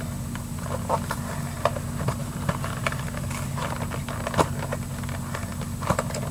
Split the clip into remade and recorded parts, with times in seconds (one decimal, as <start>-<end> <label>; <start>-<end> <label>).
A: 0.0-2.2 recorded; 2.2-3.0 remade; 3.0-6.3 recorded